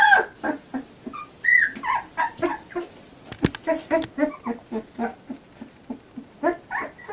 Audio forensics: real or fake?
real